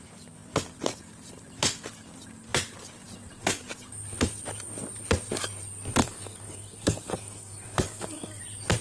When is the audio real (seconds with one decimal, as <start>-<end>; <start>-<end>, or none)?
0.0-6.0; 8.4-8.8